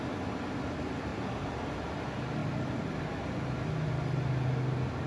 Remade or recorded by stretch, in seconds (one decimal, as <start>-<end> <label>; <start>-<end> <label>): 0.0-5.1 recorded